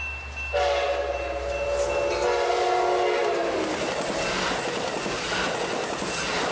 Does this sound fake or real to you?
real